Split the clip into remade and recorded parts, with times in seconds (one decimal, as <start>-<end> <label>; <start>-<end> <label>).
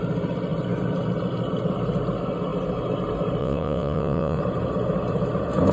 0.0-3.4 recorded; 3.4-4.4 remade; 4.4-5.7 recorded